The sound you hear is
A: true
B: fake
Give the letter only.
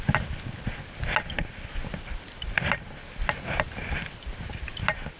A